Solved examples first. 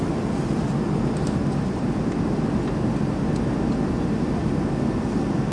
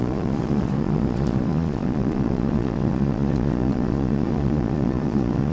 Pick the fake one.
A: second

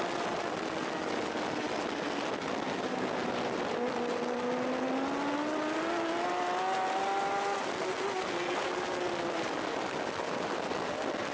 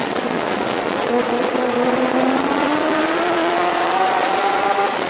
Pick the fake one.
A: second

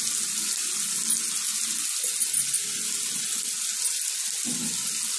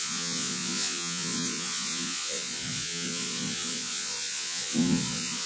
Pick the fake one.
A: second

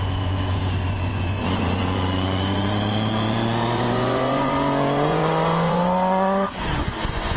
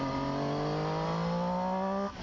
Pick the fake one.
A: first